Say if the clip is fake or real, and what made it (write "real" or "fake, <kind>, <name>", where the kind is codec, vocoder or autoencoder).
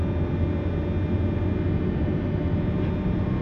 real